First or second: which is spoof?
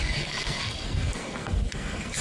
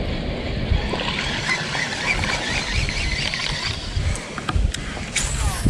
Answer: first